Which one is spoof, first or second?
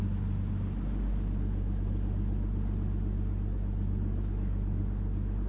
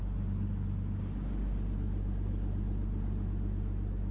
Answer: second